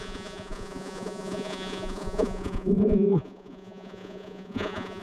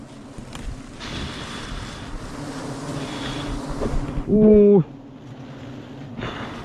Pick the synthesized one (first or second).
first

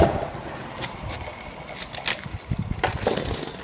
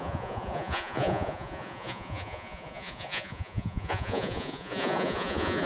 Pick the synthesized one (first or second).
second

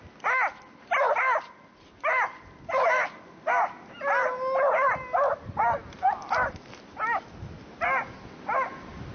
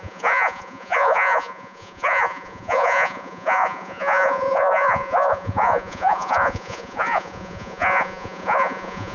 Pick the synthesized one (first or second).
second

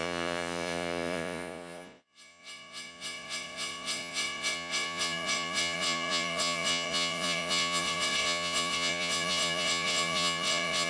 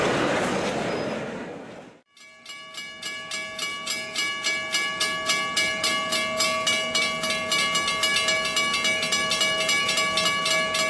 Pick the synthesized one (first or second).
first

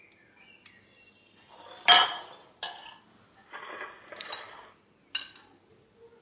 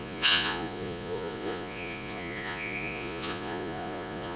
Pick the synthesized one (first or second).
second